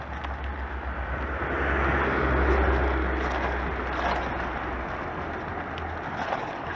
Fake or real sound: real